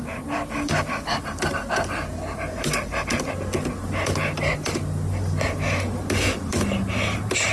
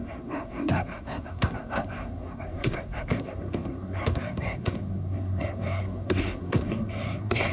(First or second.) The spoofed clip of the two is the second